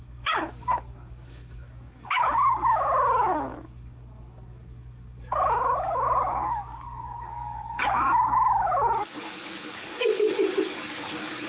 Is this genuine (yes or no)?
no